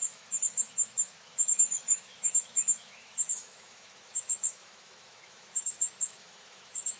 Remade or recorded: remade